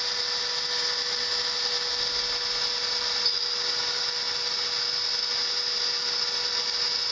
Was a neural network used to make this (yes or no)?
no